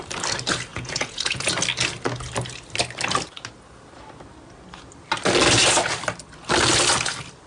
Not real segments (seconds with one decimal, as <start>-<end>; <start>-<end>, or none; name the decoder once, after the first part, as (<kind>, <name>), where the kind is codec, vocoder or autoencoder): 0.7-1.5 (vocoder, Vocos)